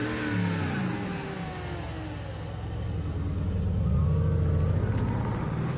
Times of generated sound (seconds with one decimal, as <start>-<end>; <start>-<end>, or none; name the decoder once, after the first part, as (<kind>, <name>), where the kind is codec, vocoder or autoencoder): none